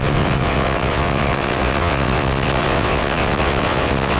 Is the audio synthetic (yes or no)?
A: yes